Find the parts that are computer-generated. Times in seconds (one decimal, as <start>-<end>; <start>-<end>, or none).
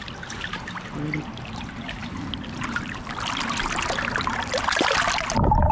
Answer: none